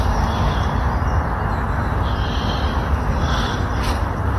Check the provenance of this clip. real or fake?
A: real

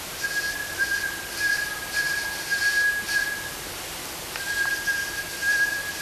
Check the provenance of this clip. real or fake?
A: real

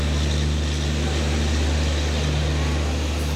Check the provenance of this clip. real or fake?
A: real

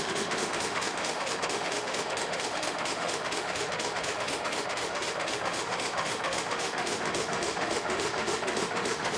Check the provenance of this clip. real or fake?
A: fake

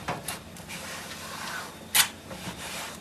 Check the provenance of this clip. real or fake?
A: real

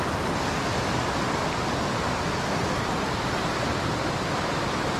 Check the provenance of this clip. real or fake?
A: real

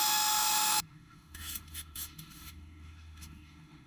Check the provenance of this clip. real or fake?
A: fake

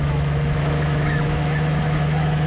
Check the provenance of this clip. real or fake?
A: fake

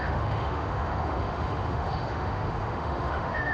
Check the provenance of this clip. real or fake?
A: fake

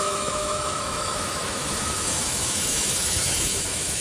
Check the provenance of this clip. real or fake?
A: fake